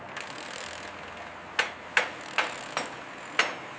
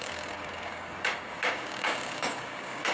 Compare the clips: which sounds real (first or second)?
first